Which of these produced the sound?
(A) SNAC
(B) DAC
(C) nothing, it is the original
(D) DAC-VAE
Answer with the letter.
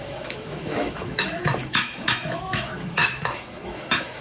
D